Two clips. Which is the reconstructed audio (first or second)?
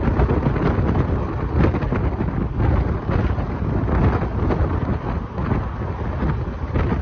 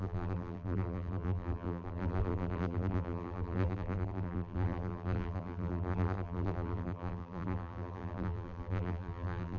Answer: second